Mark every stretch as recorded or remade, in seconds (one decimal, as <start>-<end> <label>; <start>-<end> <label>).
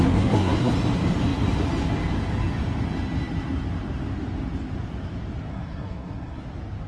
0.0-0.7 remade; 0.7-5.5 recorded; 5.5-6.4 remade; 6.4-6.9 recorded